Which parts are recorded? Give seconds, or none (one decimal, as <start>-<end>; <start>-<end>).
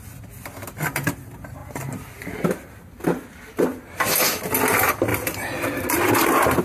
0.0-6.6